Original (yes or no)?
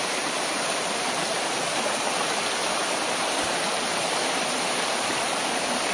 yes